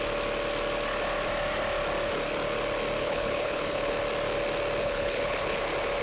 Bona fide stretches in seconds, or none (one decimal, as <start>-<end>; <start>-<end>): 0.0-3.0; 3.9-4.8; 5.6-6.0